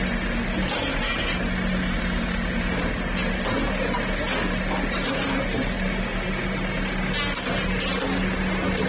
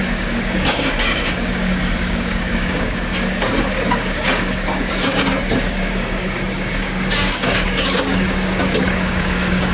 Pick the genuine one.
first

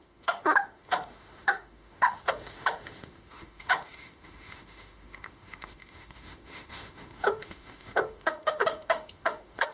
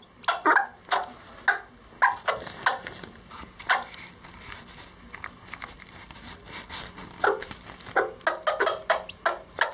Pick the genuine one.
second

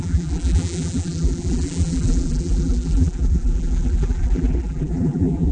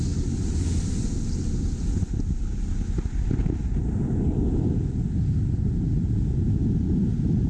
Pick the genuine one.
second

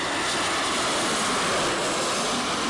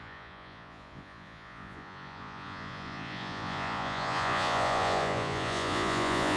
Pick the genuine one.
first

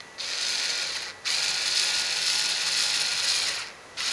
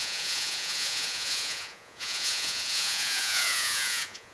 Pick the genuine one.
first